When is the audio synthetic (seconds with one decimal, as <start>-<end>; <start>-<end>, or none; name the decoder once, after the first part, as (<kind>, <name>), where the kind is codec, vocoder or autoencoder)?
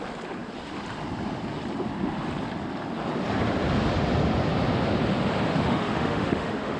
5.5-6.8 (autoencoder, DAC-VAE)